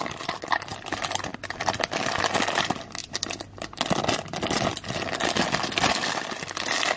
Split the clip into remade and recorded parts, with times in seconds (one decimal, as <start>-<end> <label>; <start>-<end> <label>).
0.0-7.0 recorded